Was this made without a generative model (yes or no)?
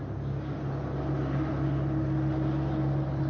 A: yes